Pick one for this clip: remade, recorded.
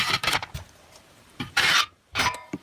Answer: remade